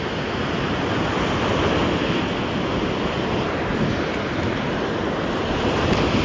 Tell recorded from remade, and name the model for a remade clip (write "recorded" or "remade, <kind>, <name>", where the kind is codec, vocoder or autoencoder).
recorded